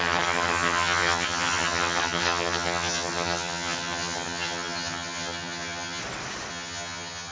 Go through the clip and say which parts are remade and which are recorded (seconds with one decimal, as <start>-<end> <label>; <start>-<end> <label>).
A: 0.0-6.0 remade; 6.0-6.5 recorded; 6.5-7.3 remade